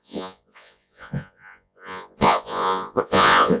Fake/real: fake